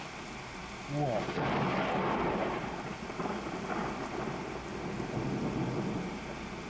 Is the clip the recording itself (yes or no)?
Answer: yes